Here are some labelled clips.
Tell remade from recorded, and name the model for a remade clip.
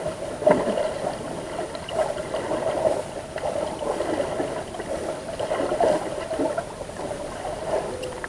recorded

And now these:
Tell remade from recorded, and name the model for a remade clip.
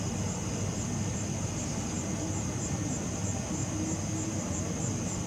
recorded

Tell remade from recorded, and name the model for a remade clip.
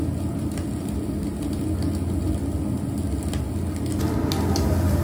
recorded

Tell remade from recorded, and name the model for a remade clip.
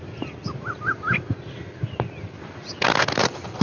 recorded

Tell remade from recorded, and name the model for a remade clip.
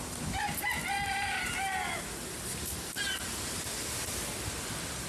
recorded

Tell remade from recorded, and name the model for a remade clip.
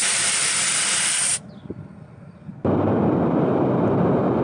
recorded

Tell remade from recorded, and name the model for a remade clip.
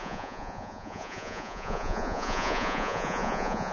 remade, vocoder, Vocos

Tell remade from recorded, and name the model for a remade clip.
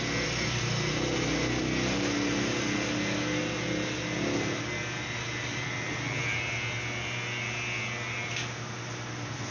recorded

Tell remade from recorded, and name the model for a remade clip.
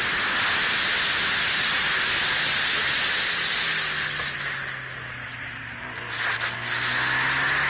recorded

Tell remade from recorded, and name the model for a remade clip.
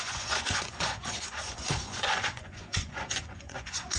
remade, vocoder, Vocos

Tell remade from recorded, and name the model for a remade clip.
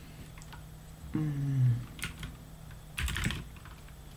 recorded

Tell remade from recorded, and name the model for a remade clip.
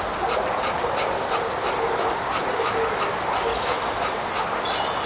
recorded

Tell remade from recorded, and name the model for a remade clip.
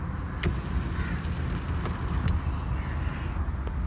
recorded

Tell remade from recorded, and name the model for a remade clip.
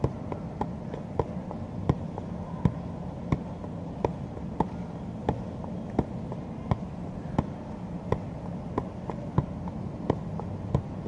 recorded